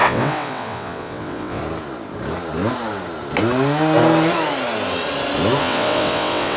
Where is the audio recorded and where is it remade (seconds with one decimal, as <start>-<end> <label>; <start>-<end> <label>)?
0.0-1.6 remade; 1.6-5.6 recorded; 5.6-6.6 remade